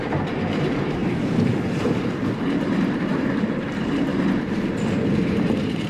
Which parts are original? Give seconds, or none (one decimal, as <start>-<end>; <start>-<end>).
1.0-1.7; 4.1-5.0